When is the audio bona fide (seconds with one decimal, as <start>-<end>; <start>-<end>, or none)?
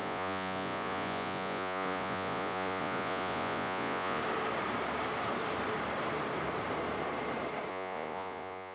4.2-7.7